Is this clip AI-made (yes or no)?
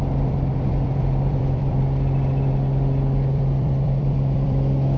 yes